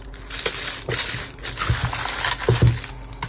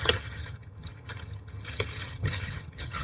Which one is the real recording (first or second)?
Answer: first